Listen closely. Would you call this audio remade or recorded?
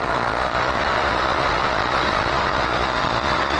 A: remade